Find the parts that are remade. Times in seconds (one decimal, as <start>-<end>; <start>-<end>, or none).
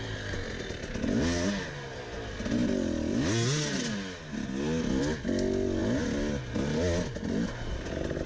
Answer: none